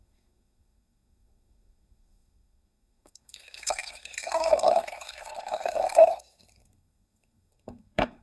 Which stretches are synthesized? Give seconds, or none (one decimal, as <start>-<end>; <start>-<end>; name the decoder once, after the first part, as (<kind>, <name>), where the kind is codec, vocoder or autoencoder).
0.0-8.2 (codec, SNAC)